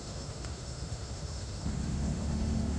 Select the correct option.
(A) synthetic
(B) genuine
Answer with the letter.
A